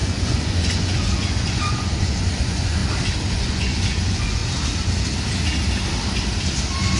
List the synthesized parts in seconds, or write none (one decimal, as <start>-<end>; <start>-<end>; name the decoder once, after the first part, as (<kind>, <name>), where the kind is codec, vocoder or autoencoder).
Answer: 0.0-2.8 (vocoder, Vocos); 3.3-4.4